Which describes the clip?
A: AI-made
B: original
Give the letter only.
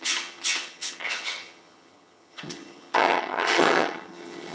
A